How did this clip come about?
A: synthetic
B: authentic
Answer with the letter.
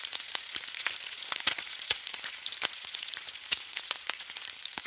A